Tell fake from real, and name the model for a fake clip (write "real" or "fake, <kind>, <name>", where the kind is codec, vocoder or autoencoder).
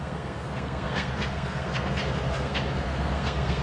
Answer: fake, codec, SNAC